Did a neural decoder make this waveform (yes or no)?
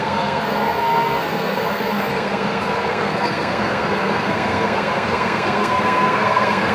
yes